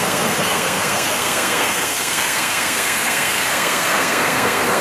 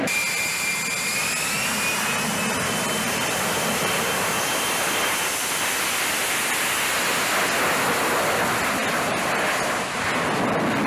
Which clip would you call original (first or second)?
second